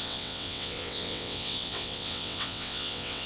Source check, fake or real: fake